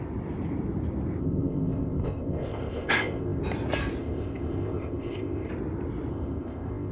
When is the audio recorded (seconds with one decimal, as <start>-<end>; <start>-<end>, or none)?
0.0-1.2; 3.4-4.0; 5.5-6.1